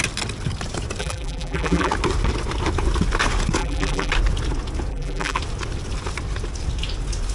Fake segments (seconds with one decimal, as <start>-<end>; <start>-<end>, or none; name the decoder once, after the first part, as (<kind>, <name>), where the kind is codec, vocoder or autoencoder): 1.0-1.9 (vocoder, BigVGAN v2); 3.6-4.1; 4.9-5.4